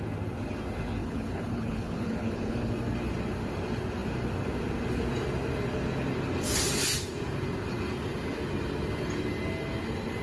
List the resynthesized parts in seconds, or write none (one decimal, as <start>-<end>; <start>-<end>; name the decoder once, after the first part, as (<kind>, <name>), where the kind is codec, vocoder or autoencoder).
1.0-2.6 (codec, HILCodec)